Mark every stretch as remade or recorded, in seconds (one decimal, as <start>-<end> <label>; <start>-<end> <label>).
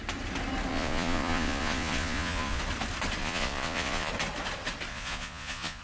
0.0-0.7 recorded; 0.7-2.6 remade; 2.6-3.2 recorded; 3.2-4.1 remade; 4.1-4.9 recorded; 4.9-5.8 remade